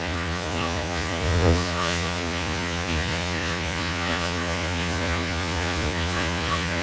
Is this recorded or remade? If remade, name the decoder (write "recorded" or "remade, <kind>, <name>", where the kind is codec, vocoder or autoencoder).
remade, vocoder, Vocos